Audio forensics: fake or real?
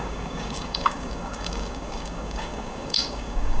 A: fake